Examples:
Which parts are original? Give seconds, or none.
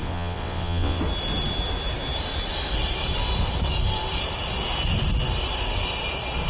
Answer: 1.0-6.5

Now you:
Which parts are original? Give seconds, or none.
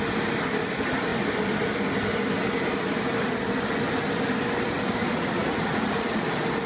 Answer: 0.0-5.0; 6.3-6.7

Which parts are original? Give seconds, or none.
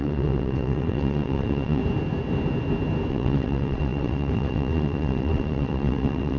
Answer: 1.8-3.1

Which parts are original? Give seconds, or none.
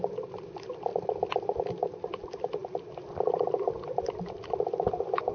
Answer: 0.0-5.3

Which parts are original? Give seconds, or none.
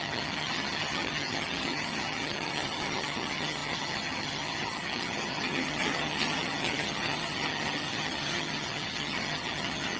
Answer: none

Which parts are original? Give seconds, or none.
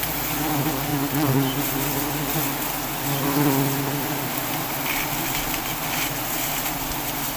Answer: 0.0-7.4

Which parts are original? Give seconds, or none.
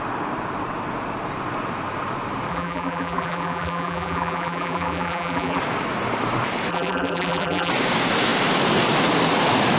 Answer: 0.0-2.5; 5.6-6.7; 7.7-9.8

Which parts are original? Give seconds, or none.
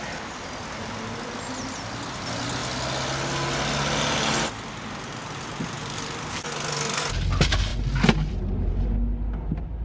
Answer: 0.0-5.2; 6.3-9.8